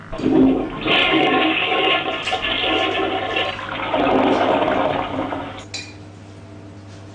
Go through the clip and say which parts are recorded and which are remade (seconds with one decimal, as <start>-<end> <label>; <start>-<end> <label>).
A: 0.0-1.0 recorded; 1.0-1.9 remade; 1.9-7.1 recorded